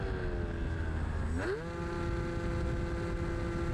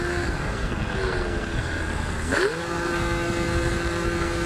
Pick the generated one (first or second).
second